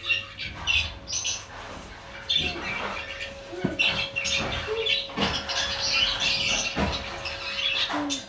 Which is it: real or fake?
real